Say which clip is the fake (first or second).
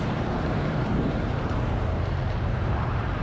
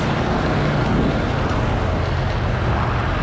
first